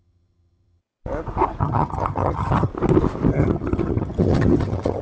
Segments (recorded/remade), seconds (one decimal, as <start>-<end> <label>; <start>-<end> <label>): 0.0-0.8 remade; 0.8-1.6 recorded; 1.6-2.7 remade; 2.7-3.3 recorded; 3.3-5.0 remade